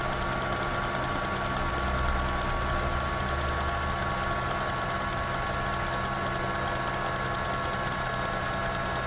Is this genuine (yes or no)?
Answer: yes